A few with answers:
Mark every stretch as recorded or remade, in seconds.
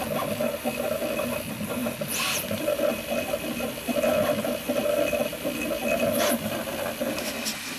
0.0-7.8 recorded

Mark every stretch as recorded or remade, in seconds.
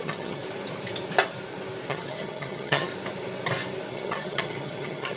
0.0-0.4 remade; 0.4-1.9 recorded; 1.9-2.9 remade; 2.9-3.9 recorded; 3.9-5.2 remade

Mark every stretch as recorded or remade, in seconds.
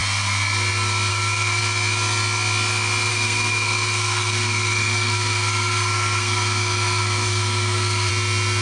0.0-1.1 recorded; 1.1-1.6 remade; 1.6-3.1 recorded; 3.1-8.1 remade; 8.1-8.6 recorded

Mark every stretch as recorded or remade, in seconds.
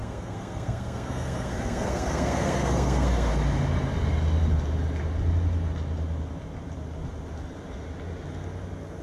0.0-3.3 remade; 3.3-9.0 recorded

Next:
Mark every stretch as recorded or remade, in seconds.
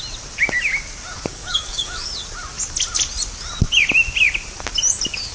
0.0-1.3 recorded; 1.3-2.1 remade; 2.1-5.3 recorded